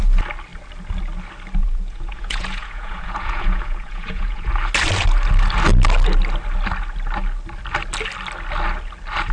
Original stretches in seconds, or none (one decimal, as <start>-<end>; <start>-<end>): 0.0-1.6; 4.5-9.3